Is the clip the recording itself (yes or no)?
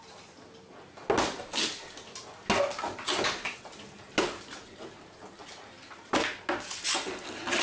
yes